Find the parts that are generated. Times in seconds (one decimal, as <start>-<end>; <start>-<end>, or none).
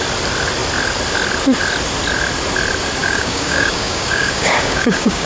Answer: 3.0-5.3